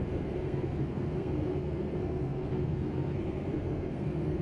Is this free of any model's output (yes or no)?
no